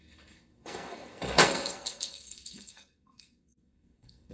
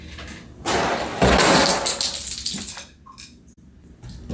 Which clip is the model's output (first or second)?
first